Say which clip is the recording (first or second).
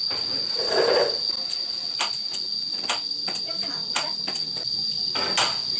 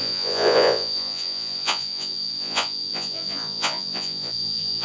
first